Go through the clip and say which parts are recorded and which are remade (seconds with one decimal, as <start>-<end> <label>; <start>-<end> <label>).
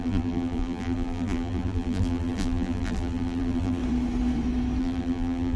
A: 0.0-3.8 remade; 3.8-4.8 recorded; 4.8-5.6 remade